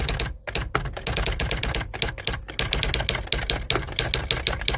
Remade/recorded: recorded